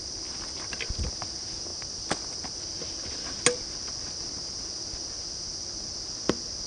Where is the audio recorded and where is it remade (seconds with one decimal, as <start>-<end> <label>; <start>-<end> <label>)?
0.0-6.7 recorded

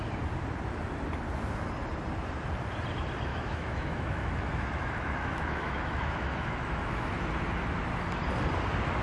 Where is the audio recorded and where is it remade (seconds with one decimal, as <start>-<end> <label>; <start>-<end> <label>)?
0.0-3.3 recorded; 3.3-7.1 remade; 7.1-9.0 recorded

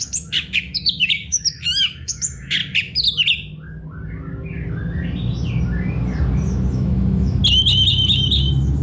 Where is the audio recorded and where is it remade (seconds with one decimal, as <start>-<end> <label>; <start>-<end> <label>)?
0.0-2.6 remade; 2.6-6.7 recorded; 6.7-7.4 remade; 7.4-8.8 recorded

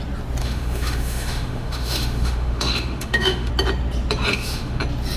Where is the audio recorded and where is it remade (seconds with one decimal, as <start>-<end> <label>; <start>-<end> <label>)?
0.0-0.4 recorded; 0.4-3.5 remade; 3.5-4.3 recorded; 4.3-4.8 remade; 4.8-5.2 recorded

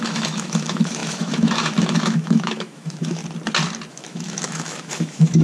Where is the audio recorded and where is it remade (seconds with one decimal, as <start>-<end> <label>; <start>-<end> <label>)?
0.0-3.2 remade; 3.2-3.9 recorded; 3.9-5.4 remade

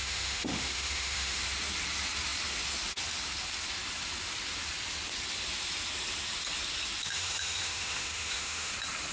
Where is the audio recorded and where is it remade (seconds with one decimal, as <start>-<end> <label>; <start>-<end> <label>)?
0.0-1.4 remade; 1.4-7.0 recorded; 7.0-8.7 remade; 8.7-9.1 recorded

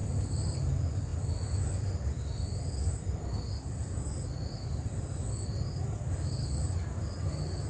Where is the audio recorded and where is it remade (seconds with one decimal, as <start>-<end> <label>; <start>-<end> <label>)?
0.0-7.7 recorded